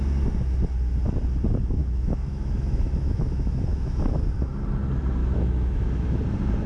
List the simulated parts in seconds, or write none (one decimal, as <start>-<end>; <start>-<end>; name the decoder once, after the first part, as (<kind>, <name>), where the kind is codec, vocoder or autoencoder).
1.8-4.0 (autoencoder, DAC-VAE); 5.2-6.2